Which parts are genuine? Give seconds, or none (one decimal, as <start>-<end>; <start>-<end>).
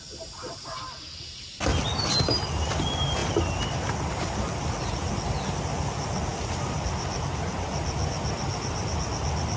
0.0-9.6